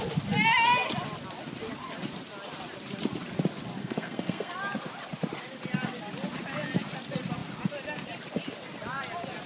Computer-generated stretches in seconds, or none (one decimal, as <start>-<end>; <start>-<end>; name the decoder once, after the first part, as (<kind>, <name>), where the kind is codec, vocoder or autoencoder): 3.8-4.5 (codec, SNAC)